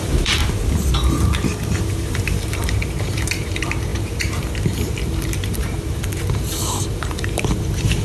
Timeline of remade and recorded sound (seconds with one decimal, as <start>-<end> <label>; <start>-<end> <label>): 0.0-0.4 remade; 0.4-1.9 recorded; 1.9-8.0 remade